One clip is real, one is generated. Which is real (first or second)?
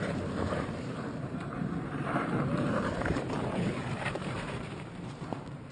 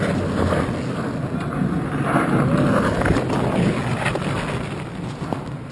second